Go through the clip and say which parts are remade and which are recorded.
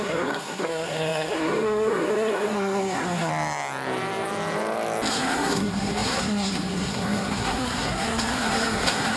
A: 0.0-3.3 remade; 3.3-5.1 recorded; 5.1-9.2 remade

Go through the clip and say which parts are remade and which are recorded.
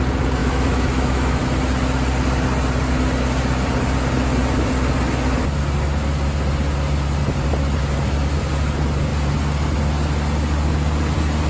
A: 0.0-0.4 recorded; 0.4-1.4 remade; 1.4-11.5 recorded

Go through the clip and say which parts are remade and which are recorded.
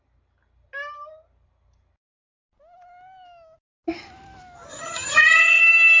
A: 0.0-4.7 recorded; 4.7-5.6 remade; 5.6-6.0 recorded